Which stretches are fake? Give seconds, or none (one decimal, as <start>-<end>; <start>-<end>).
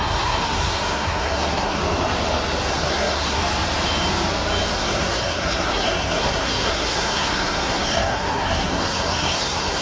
0.0-1.8; 2.7-3.4; 4.7-9.8